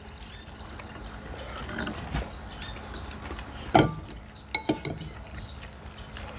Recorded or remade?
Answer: recorded